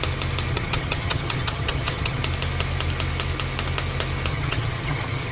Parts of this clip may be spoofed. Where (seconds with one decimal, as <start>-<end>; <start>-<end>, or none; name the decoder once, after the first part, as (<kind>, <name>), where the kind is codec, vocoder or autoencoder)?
0.5-2.2 (vocoder, HiFi-GAN); 4.3-5.3